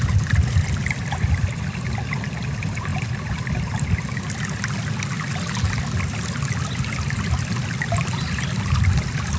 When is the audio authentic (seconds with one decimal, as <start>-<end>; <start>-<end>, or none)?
0.0-9.4